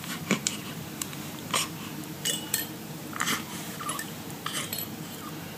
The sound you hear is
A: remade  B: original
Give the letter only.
A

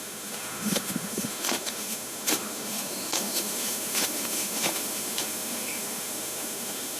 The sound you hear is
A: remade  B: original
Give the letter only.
A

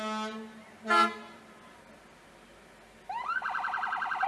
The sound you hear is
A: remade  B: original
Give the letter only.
B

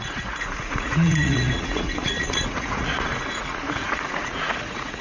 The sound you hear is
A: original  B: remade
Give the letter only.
B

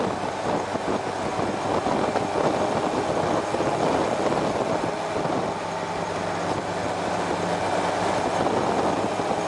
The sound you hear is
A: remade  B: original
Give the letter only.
B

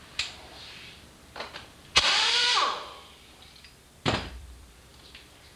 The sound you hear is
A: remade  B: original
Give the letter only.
A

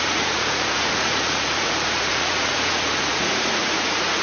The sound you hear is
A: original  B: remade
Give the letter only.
B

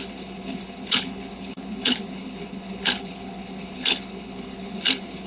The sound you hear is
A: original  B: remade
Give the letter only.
B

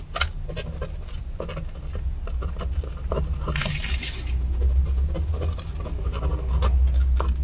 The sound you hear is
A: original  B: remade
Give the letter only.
A